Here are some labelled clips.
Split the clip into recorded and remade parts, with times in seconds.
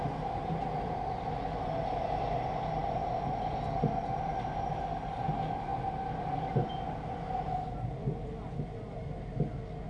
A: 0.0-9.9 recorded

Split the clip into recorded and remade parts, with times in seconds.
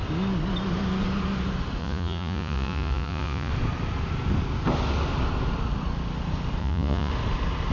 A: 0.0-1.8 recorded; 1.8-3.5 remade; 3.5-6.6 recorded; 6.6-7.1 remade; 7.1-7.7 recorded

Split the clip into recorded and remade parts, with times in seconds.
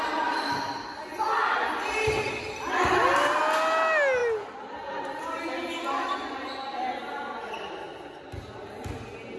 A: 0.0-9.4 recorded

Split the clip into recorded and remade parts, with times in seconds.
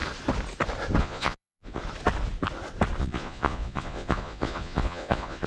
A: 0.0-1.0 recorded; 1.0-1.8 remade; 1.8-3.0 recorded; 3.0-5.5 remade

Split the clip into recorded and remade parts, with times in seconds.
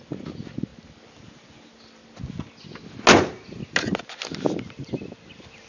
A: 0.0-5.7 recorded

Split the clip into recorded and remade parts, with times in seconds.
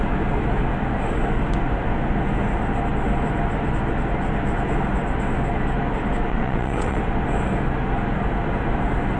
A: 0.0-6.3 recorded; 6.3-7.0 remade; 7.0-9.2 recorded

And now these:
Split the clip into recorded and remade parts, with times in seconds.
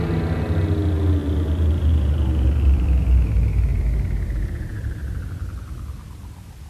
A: 0.0-1.2 recorded; 1.2-5.2 remade; 5.2-6.7 recorded